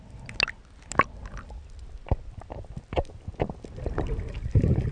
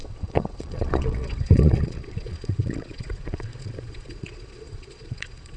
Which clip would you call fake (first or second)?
second